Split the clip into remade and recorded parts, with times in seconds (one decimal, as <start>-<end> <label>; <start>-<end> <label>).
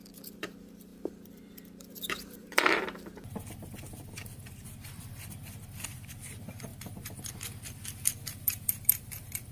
0.0-6.7 remade; 6.7-7.3 recorded; 7.3-9.5 remade